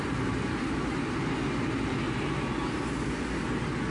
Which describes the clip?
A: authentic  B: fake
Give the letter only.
A